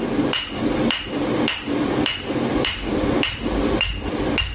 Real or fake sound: real